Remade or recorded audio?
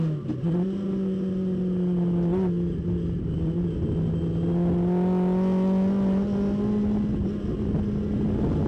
recorded